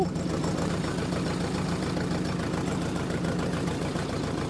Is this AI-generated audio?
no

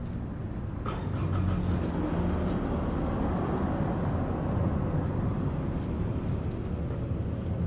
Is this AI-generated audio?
no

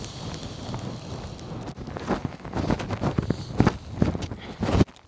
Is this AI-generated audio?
no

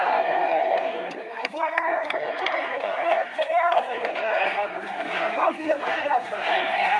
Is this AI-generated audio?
yes